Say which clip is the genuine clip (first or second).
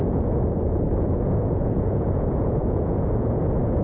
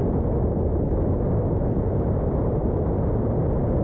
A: second